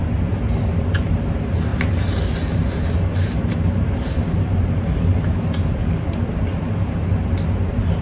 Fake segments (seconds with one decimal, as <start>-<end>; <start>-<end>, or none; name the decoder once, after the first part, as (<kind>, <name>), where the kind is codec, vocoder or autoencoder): 0.0-5.8 (vocoder, BigVGAN v2)